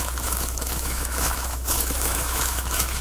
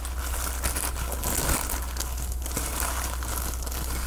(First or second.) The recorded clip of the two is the second